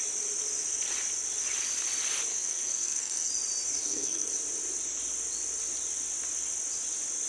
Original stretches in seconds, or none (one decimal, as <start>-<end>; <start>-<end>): 0.0-2.3; 3.3-3.8; 4.3-7.3